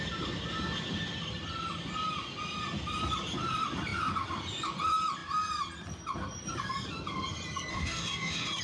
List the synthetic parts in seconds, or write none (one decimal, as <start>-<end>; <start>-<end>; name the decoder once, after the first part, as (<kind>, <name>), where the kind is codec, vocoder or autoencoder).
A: 7.7-8.6 (codec, DAC)